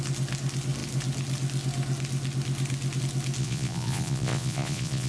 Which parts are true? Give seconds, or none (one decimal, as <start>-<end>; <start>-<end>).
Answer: 0.0-3.4